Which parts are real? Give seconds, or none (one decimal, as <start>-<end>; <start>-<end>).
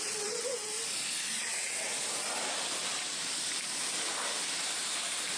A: 0.7-1.4; 1.9-5.4